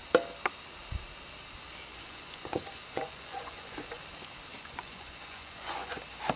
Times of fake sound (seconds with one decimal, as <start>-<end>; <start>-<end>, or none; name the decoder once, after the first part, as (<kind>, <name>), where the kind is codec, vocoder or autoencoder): 1.9-4.0 (vocoder, Vocos); 4.5-6.0